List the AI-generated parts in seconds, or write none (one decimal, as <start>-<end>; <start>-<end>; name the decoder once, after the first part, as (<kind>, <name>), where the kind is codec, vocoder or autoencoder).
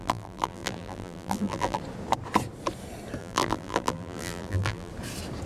0.0-1.8 (vocoder, BigVGAN v2); 3.2-4.9